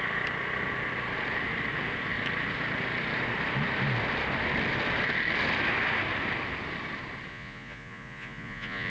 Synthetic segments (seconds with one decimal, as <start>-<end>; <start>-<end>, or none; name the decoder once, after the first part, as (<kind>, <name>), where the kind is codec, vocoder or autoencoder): 7.3-8.9 (vocoder, Vocos)